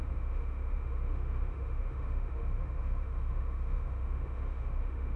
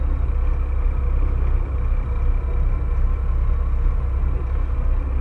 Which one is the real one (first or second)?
second